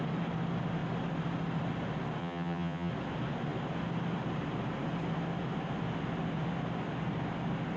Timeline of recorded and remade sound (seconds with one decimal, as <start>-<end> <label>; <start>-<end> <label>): 0.0-2.2 recorded; 2.2-2.9 remade; 2.9-7.8 recorded